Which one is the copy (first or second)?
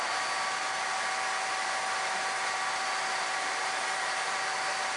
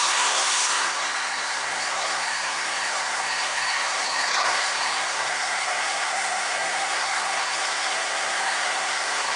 second